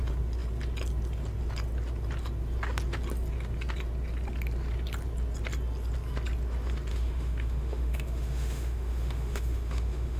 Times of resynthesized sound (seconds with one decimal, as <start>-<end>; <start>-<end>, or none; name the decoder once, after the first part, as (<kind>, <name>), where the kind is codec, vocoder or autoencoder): 6.9-10.2 (autoencoder, DAC-VAE)